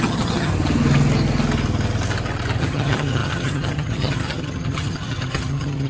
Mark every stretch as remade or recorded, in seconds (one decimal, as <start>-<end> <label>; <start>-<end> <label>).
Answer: 0.0-0.5 remade; 0.5-2.6 recorded; 2.6-5.9 remade